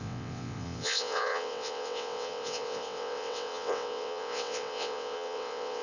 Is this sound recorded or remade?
remade